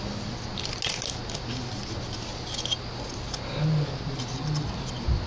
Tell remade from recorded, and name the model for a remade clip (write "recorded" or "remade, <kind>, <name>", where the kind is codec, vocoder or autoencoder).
recorded